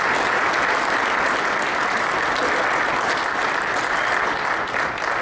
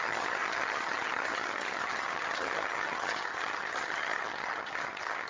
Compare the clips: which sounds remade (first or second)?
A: second